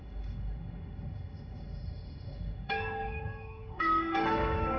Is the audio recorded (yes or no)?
no